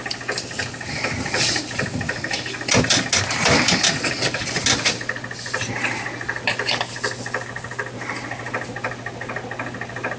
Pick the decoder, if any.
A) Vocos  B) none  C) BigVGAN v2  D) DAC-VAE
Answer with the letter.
B